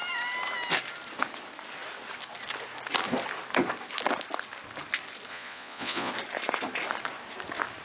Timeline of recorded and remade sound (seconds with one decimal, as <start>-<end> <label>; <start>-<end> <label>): 0.0-5.3 recorded; 5.3-6.1 remade; 6.1-7.8 recorded